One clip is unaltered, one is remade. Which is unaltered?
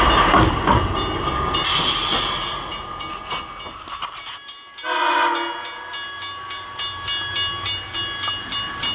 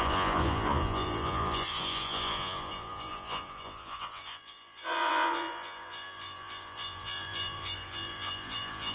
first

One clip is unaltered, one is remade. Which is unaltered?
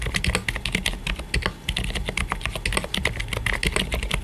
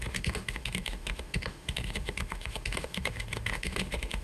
first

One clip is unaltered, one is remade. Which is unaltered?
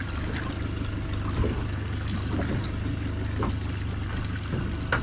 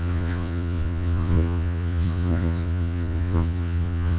first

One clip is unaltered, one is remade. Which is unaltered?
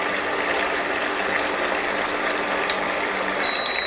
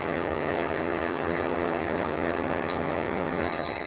first